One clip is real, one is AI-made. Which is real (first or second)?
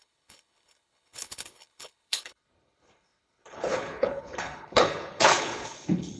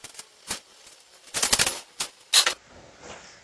second